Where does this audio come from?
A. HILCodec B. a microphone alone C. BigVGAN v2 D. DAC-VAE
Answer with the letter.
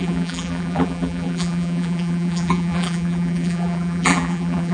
C